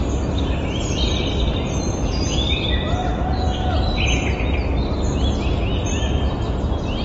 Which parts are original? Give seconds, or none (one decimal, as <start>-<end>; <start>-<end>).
0.0-7.0